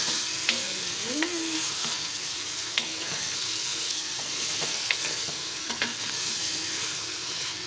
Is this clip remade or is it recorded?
remade